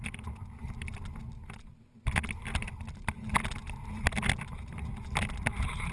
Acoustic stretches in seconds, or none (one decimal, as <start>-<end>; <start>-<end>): 0.0-5.9